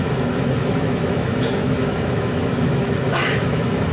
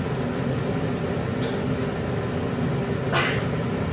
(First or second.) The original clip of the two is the second